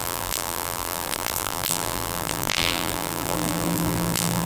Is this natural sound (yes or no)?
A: no